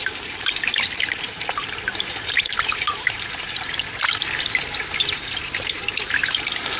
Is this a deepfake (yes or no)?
yes